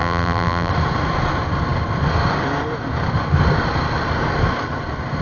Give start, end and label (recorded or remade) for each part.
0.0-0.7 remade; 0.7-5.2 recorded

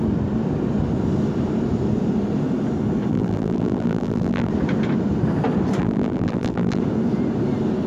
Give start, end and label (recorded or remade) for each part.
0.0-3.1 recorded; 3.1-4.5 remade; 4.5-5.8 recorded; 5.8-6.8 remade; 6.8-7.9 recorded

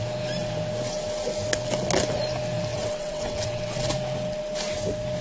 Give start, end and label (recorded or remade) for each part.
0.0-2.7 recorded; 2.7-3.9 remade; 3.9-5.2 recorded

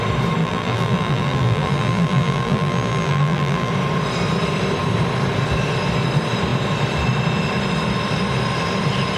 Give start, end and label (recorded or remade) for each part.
0.0-0.4 recorded; 0.4-3.7 remade; 3.7-9.2 recorded

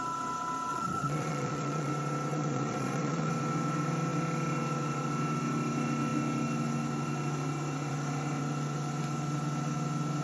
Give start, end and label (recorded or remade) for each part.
0.0-0.7 recorded; 0.7-1.9 remade; 1.9-2.3 recorded; 2.3-3.3 remade; 3.3-10.2 recorded

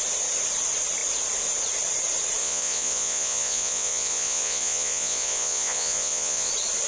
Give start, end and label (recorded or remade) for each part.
0.0-2.4 recorded; 2.4-6.5 remade; 6.5-6.9 recorded

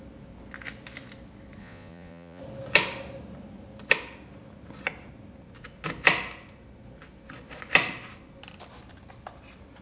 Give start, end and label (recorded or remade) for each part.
0.0-1.6 recorded; 1.6-2.4 remade; 2.4-9.8 recorded

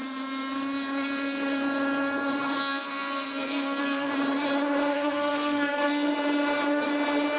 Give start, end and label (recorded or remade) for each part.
0.0-2.6 recorded; 2.6-4.1 remade; 4.1-4.9 recorded; 4.9-6.1 remade; 6.1-7.4 recorded